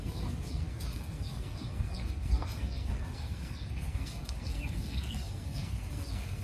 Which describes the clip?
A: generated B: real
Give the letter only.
A